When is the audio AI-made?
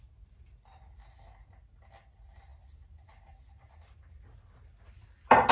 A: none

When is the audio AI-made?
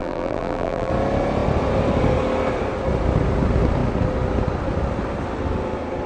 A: 0.0-0.9 (vocoder, BigVGAN v2)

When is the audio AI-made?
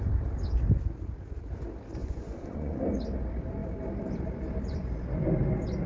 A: 2.0-2.8 (vocoder, Vocos)